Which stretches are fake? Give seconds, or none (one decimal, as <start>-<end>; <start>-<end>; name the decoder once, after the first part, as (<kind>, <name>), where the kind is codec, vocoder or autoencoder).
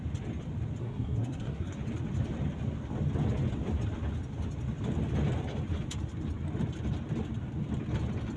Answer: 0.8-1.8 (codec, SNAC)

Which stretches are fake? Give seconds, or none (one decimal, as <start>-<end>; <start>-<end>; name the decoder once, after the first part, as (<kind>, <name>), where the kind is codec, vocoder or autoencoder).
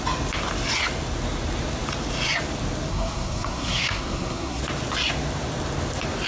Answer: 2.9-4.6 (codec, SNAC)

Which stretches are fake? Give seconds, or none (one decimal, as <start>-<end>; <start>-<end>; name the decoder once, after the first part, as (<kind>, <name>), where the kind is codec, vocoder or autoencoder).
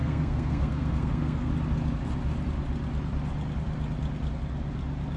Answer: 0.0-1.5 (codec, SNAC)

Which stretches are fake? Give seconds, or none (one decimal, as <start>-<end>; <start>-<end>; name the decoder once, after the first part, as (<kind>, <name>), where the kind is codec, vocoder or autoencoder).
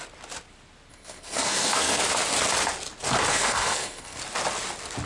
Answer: 0.9-2.0 (codec, SNAC); 3.3-4.2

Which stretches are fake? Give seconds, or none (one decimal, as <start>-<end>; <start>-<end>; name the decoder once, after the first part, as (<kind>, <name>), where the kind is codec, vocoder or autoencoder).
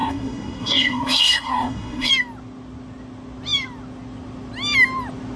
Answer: 0.0-2.1 (codec, SNAC)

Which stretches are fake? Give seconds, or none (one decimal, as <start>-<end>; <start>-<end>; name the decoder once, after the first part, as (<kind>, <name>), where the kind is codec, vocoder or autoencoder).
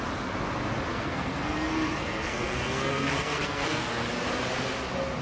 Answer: 0.9-3.9 (codec, SNAC)